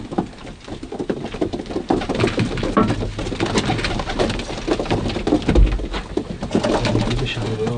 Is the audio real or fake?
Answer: real